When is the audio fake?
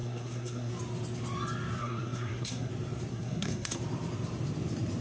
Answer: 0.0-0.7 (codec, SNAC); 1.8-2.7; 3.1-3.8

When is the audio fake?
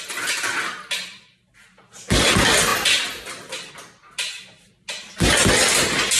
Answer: none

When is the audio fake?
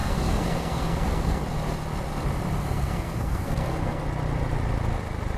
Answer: 0.0-1.4 (codec, SNAC); 2.6-4.0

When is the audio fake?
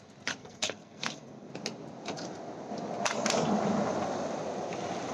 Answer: 0.4-1.5 (codec, SNAC)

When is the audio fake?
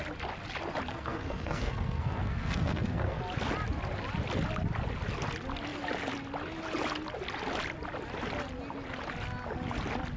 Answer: 0.9-3.2 (codec, SNAC)